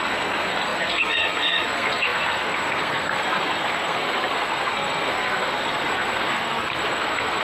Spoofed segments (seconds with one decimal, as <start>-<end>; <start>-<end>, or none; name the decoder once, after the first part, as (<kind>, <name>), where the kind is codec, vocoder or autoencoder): 0.0-7.4 (codec, SNAC)

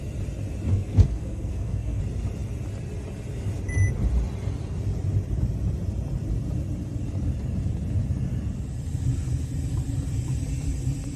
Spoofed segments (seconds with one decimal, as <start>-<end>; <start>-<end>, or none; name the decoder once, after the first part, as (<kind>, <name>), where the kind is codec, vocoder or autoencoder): 0.7-2.0 (codec, SNAC)